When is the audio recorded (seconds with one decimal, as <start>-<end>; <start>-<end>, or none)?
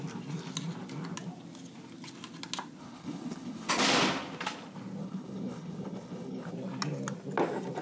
0.0-2.8; 3.7-5.0; 6.5-7.8